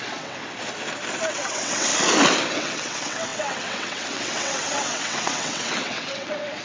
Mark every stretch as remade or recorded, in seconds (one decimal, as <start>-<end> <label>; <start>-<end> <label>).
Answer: 0.0-0.4 remade; 0.4-1.3 recorded; 1.3-1.9 remade; 1.9-2.5 recorded; 2.5-6.6 remade